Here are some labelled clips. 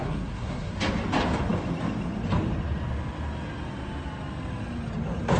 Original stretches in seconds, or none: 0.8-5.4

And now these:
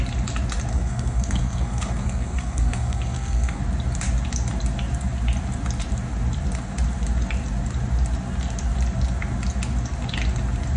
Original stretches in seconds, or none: 0.0-0.7; 3.6-10.8

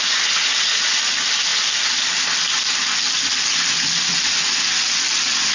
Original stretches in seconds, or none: 0.0-5.5

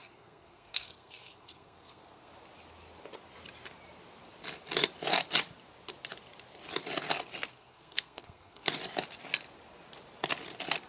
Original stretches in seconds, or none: 2.3-7.5; 8.7-10.9